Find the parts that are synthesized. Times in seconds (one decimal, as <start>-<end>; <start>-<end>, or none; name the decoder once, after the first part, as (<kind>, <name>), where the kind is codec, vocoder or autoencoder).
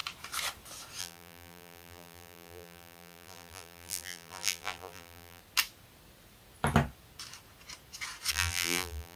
1.0-5.4 (vocoder, BigVGAN v2); 8.3-9.2